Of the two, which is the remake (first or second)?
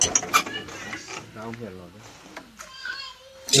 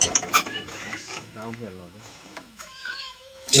second